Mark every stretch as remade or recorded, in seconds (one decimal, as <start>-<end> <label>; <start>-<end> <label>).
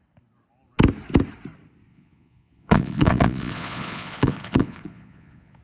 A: 0.0-1.9 recorded; 1.9-5.6 remade